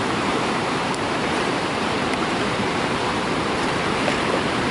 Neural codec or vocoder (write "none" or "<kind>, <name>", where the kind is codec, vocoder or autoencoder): vocoder, BigVGAN v2